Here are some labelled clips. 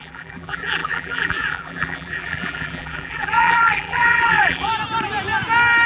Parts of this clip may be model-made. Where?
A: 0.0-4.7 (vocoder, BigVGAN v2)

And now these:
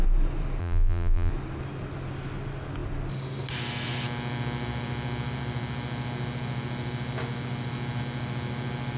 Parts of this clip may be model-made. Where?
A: 0.6-1.3 (vocoder, BigVGAN v2)

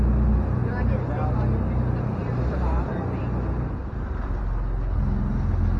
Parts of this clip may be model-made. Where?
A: 2.2-3.2 (vocoder, BigVGAN v2); 3.8-4.4

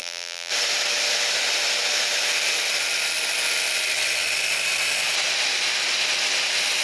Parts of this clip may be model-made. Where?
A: 0.0-0.5 (vocoder, BigVGAN v2)

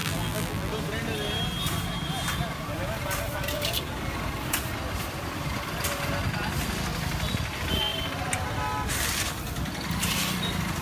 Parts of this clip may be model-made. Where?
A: 0.0-0.7 (vocoder, BigVGAN v2)

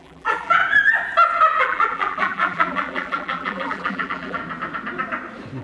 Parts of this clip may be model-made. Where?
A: 0.0-0.6 (vocoder, BigVGAN v2); 1.6-4.4

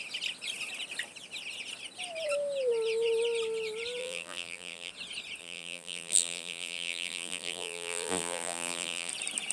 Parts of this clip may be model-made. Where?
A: 4.0-4.9 (vocoder, BigVGAN v2); 5.4-9.1

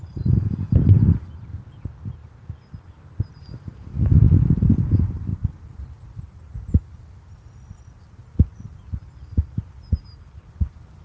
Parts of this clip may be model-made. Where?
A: 5.3-10.5 (vocoder, BigVGAN v2)